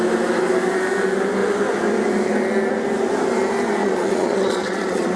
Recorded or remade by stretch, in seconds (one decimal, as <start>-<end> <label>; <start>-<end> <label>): 0.0-3.8 recorded; 3.8-5.2 remade